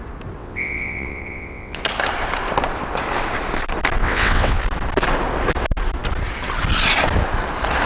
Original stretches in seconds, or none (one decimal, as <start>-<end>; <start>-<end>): 0.0-0.4; 1.8-4.0; 4.6-7.9